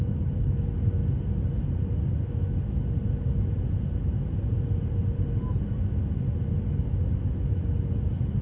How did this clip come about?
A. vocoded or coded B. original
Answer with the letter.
B